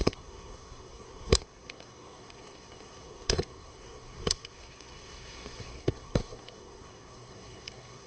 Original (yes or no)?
no